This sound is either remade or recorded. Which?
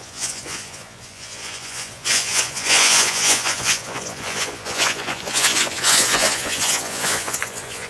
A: remade